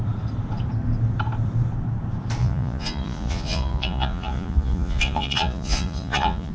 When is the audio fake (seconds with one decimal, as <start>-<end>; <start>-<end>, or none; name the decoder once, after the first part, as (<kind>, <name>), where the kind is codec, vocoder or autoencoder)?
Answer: 2.4-6.5 (vocoder, Vocos)